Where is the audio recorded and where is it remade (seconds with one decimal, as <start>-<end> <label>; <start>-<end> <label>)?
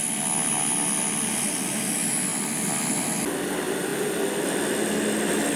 0.0-5.6 recorded